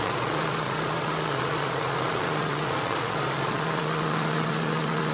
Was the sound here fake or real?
fake